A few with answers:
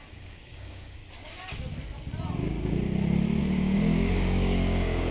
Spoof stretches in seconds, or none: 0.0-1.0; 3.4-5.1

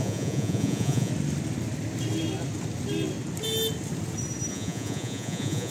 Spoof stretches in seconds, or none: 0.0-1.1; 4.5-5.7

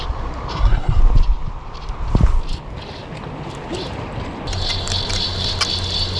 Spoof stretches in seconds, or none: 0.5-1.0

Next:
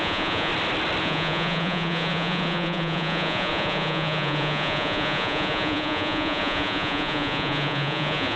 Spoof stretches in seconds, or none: 0.0-0.5; 1.0-8.4